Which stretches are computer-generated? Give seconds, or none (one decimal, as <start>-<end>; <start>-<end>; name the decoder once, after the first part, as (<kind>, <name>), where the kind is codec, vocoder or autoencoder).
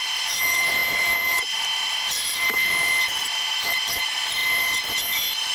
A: 0.0-4.4 (vocoder, BigVGAN v2)